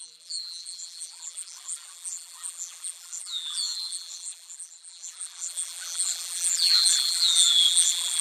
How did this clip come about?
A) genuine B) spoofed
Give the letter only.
B